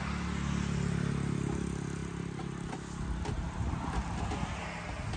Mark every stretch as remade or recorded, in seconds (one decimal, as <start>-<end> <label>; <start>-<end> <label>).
0.0-5.2 recorded